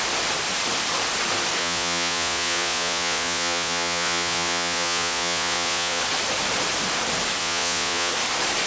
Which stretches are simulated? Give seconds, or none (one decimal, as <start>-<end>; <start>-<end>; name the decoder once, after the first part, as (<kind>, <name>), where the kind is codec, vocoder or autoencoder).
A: 1.6-6.0 (vocoder, Vocos); 7.4-8.1